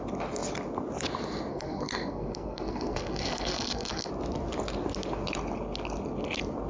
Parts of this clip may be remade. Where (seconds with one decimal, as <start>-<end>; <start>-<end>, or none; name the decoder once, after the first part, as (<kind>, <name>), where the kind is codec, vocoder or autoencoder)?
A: 1.5-4.1 (codec, SNAC)